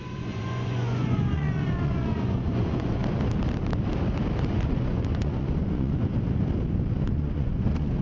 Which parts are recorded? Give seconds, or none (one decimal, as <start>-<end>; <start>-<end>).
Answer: 3.0-4.5; 6.1-6.9